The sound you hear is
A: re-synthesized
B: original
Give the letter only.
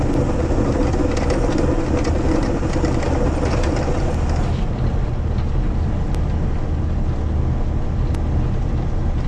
B